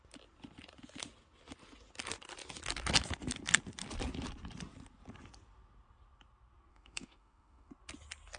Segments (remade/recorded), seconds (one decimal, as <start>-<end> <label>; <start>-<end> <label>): 0.0-6.7 recorded; 6.7-7.7 remade; 7.7-8.4 recorded